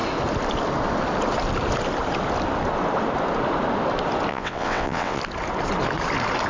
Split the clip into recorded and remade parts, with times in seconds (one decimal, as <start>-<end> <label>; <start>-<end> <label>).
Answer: 0.0-4.3 recorded; 4.3-5.2 remade; 5.2-6.5 recorded